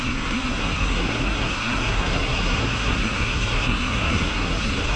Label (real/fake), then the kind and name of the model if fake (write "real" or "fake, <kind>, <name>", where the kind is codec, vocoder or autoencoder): fake, codec, SNAC